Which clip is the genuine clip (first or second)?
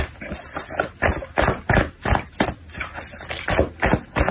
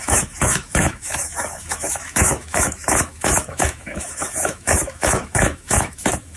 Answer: first